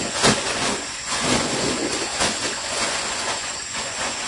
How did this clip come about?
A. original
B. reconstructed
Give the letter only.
B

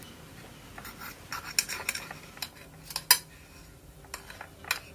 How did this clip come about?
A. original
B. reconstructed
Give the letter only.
A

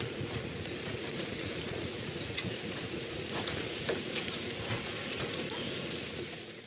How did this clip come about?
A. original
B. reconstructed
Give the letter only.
B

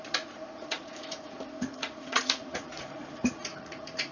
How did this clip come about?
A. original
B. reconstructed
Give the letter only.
B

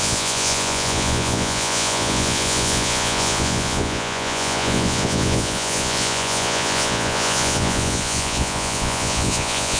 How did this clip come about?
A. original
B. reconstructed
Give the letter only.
B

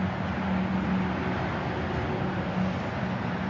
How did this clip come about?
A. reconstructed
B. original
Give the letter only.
B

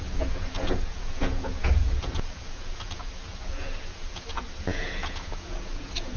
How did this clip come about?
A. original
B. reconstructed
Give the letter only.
B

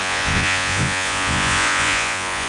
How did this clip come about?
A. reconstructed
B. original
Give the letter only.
A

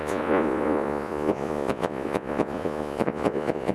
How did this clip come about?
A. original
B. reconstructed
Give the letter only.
B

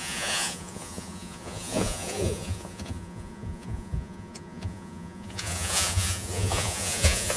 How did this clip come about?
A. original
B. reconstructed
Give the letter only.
B